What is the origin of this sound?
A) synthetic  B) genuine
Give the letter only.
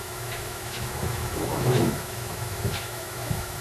A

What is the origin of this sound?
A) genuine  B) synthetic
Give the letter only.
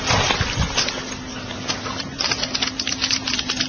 A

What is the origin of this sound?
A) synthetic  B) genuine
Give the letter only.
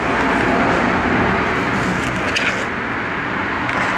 B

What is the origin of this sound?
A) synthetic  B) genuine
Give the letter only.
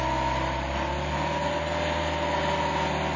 B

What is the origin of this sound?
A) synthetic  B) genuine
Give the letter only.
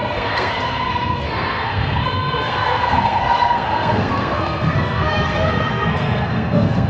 A